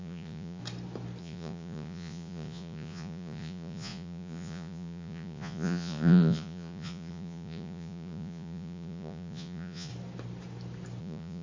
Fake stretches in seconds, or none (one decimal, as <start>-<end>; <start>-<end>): 0.0-0.6; 1.2-9.9; 11.0-11.4